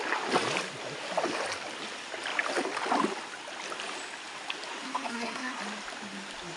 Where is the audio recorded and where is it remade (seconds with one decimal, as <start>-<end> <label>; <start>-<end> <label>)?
0.0-4.7 recorded; 4.7-5.6 remade; 5.6-6.6 recorded